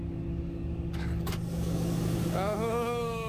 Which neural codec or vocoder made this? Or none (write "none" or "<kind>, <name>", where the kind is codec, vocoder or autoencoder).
codec, DAC